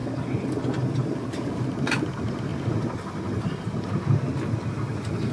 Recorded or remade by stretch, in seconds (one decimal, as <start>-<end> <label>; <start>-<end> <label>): 0.0-5.3 recorded